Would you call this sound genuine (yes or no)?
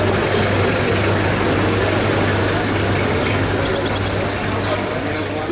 yes